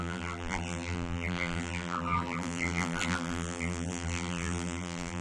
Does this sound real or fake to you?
fake